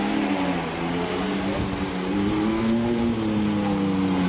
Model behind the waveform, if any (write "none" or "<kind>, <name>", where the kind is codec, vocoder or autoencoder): none